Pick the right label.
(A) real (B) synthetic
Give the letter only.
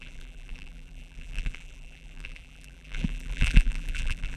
B